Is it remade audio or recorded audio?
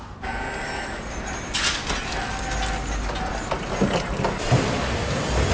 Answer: recorded